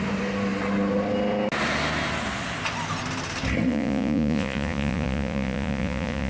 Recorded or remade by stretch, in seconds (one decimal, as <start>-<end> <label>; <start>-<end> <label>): 0.0-3.7 recorded; 3.7-6.3 remade